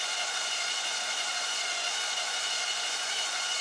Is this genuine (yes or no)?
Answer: no